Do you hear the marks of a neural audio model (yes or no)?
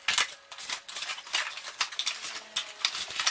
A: no